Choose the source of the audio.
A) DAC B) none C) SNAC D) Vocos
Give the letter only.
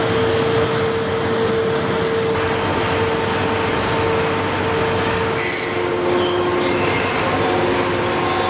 B